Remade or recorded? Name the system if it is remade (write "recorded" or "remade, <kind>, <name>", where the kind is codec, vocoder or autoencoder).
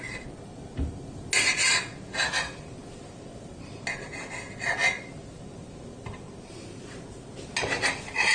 recorded